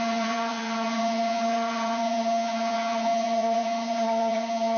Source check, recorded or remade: remade